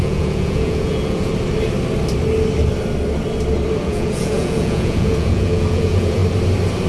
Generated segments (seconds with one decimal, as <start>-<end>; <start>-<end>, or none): 0.0-1.3; 3.8-6.2